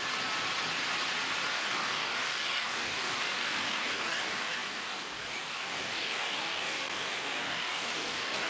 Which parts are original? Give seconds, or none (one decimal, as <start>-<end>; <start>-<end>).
0.0-1.5